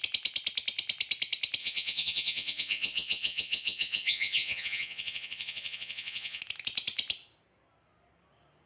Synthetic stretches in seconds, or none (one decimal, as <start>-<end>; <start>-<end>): 1.6-6.4

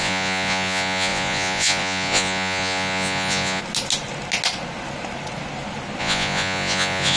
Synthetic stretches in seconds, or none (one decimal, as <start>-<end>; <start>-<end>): 0.0-3.6; 6.0-7.2

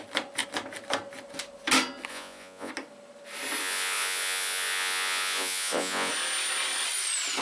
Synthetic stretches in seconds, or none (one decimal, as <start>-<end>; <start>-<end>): 2.1-2.7; 3.6-6.1

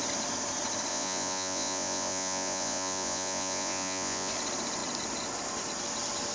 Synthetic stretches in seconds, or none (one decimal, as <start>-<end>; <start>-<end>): 0.9-4.3

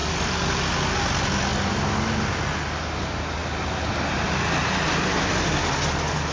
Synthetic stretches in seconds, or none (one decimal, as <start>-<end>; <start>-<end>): none